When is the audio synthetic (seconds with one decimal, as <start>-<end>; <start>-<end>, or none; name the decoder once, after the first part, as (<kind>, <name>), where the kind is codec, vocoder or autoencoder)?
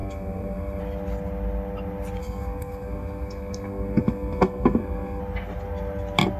0.0-0.8 (codec, SNAC); 2.2-5.2